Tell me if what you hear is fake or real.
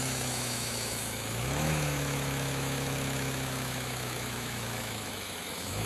fake